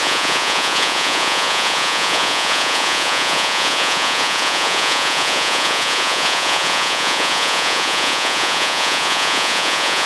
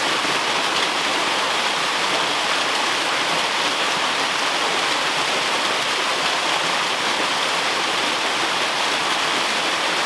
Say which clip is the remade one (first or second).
first